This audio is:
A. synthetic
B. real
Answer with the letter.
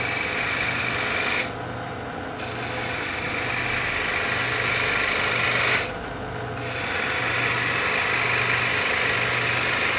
B